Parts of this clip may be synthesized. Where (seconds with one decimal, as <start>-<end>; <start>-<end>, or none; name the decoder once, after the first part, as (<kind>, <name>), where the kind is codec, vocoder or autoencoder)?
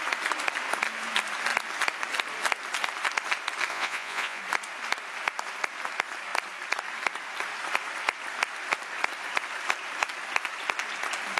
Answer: 3.7-4.4 (vocoder, Vocos)